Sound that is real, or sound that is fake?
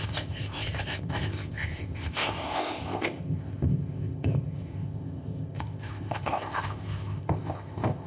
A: fake